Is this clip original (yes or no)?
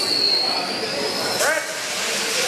yes